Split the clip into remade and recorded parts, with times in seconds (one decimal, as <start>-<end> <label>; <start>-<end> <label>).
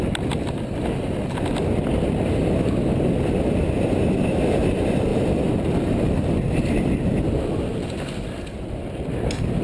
0.0-5.1 recorded; 5.1-6.1 remade; 6.1-9.6 recorded